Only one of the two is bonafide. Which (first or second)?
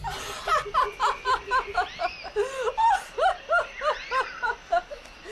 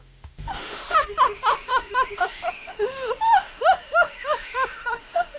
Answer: first